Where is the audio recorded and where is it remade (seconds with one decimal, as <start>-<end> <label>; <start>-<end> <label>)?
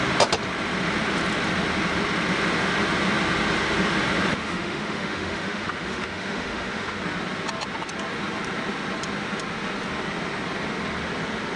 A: 0.0-4.3 recorded; 4.3-7.0 remade; 7.0-11.6 recorded